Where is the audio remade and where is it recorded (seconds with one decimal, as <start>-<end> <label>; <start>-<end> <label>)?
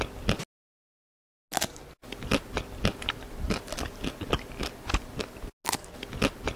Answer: 0.0-2.0 recorded; 2.0-5.5 remade; 5.5-6.6 recorded